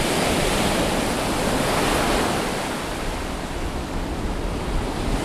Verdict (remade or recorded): recorded